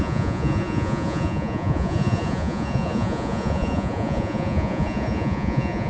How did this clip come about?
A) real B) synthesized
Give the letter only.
B